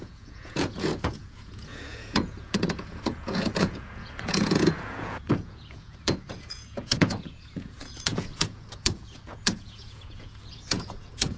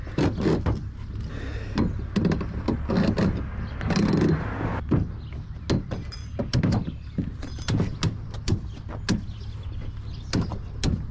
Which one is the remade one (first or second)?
first